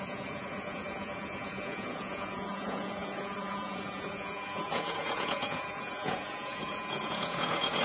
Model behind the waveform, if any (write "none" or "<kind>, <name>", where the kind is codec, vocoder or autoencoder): vocoder, Vocos